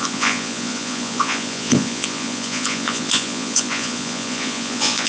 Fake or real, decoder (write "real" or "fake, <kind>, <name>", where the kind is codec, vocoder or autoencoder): fake, vocoder, Vocos